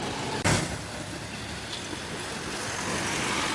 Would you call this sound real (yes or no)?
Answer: yes